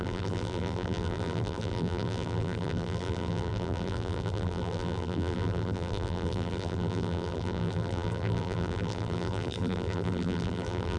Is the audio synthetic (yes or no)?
yes